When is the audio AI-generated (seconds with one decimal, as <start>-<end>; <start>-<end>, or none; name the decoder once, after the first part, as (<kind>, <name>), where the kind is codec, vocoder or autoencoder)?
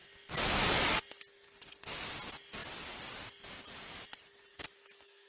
4.5-5.3 (autoencoder, DAC-VAE)